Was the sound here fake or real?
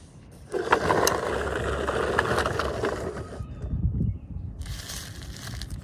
real